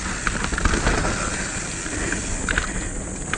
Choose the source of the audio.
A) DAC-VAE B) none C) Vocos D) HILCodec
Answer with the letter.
B